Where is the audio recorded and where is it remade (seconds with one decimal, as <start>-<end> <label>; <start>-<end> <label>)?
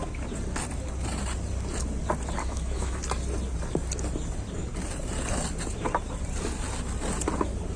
0.0-2.4 recorded; 2.4-3.0 remade; 3.0-7.8 recorded